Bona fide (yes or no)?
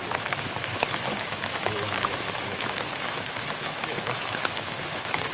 no